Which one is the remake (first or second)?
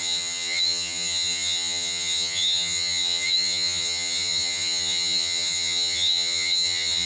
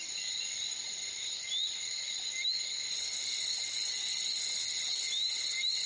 first